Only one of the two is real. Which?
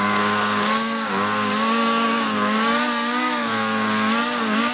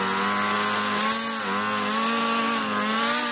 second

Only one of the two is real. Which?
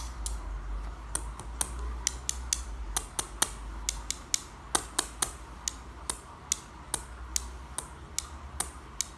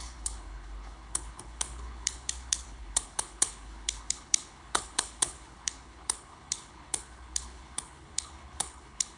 first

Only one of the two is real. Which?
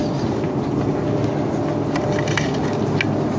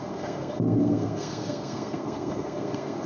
first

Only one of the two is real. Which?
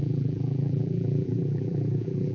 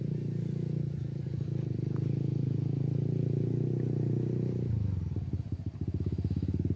second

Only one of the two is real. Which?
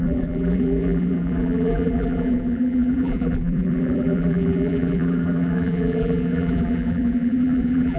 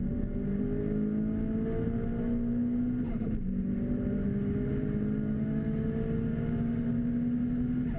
second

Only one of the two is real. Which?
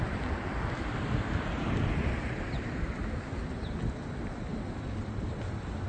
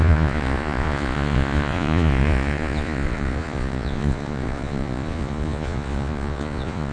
first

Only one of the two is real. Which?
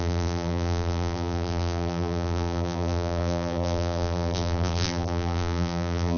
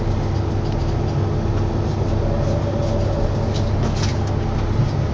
second